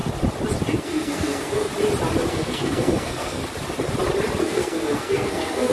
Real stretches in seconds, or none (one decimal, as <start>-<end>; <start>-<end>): 0.0-0.7; 1.7-2.3; 3.4-4.4

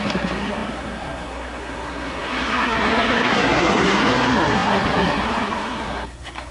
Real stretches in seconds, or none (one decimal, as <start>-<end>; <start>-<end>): none

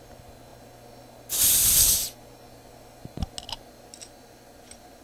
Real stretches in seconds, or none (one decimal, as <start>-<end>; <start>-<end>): 0.0-5.0

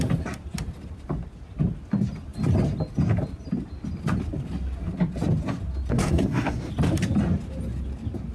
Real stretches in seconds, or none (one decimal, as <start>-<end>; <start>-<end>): 0.0-5.9; 6.7-8.3

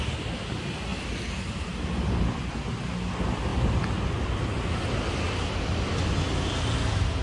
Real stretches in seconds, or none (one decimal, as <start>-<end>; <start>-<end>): 0.0-7.2

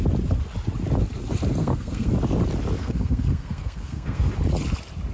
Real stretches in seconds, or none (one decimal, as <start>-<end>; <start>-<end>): 0.0-1.6; 2.1-2.8; 4.3-5.1